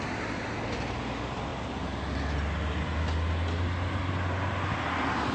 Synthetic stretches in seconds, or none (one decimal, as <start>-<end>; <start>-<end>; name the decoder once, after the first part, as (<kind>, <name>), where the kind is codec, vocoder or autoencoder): none